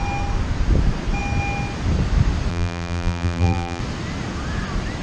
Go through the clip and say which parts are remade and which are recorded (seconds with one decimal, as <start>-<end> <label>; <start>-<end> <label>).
0.0-2.5 recorded; 2.5-3.8 remade; 3.8-5.0 recorded